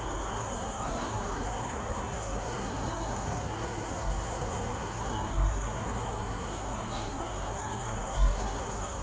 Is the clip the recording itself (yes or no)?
no